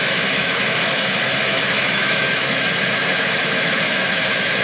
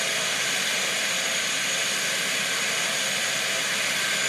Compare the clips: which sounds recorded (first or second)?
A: second